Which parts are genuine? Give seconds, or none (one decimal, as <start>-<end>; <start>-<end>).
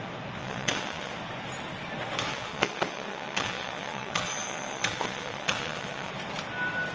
0.0-0.4; 1.1-2.3; 6.1-6.9